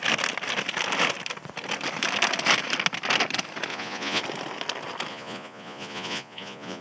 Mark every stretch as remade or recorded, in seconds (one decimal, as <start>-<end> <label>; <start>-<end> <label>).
0.0-3.7 recorded; 3.7-4.2 remade; 4.2-5.1 recorded; 5.1-6.8 remade